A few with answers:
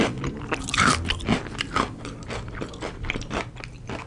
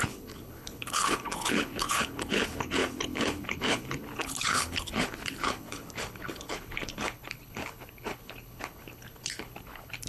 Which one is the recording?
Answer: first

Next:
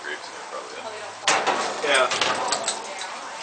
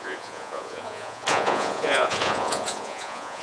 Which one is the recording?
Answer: first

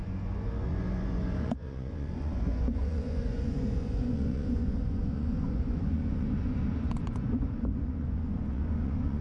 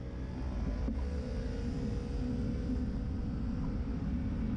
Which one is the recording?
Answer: second